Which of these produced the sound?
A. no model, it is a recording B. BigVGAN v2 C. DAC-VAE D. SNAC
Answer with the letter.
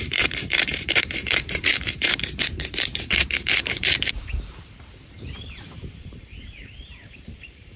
B